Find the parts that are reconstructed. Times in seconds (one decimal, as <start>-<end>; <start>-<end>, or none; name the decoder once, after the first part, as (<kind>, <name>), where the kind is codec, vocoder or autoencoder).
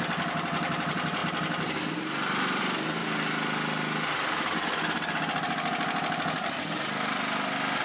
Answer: 0.0-1.2 (vocoder, BigVGAN v2); 2.6-3.0; 6.6-7.8